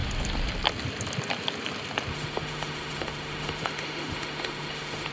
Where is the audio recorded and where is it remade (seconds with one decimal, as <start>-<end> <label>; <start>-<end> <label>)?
0.0-2.1 recorded; 2.1-5.1 remade